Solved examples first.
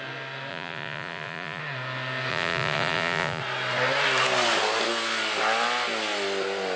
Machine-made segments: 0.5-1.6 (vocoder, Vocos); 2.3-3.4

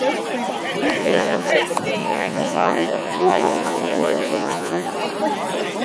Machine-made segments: 1.0-1.5 (vocoder, Vocos); 2.0-4.9

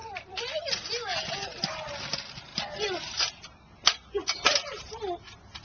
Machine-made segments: none